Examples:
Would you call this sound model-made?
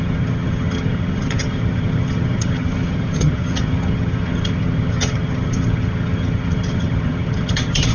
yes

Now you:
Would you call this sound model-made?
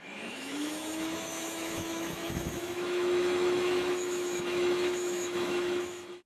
yes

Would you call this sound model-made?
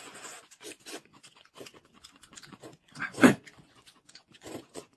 yes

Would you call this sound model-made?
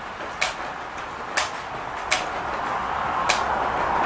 no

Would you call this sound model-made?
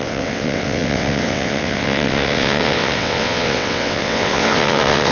yes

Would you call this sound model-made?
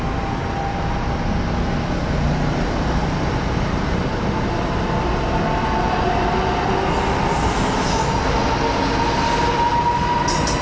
no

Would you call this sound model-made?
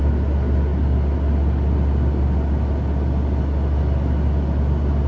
no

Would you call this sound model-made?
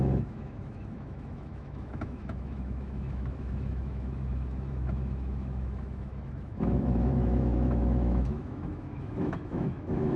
yes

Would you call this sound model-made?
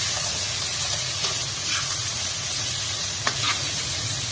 yes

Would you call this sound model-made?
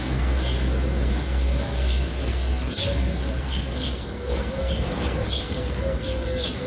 yes